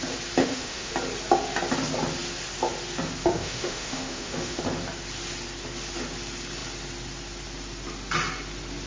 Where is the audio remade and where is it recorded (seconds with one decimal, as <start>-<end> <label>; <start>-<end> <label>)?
0.0-0.4 recorded; 0.4-0.9 remade; 0.9-3.2 recorded; 3.2-4.6 remade; 4.6-8.9 recorded